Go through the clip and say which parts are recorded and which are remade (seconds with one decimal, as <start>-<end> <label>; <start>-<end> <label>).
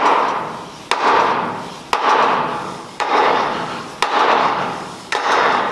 0.0-2.5 recorded; 2.5-3.9 remade; 3.9-4.4 recorded; 4.4-5.7 remade